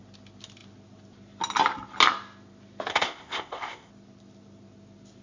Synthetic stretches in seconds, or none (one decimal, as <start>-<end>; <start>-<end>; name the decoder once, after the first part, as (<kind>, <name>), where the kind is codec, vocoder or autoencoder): 2.9-3.9 (codec, ZipCodec)